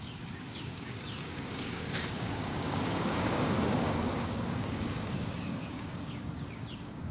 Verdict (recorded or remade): remade